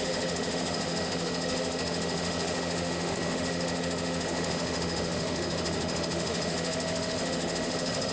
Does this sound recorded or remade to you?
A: remade